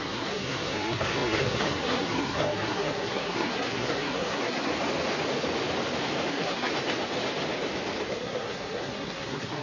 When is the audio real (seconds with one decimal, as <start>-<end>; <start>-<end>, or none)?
4.7-6.3; 6.7-8.1